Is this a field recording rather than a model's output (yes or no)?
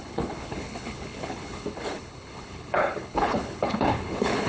no